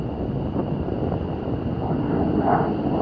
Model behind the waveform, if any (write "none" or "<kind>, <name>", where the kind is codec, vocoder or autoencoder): none